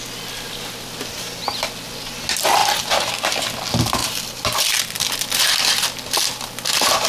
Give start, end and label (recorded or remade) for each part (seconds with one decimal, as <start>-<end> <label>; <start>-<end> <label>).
0.0-4.0 recorded; 4.0-4.8 remade; 4.8-7.1 recorded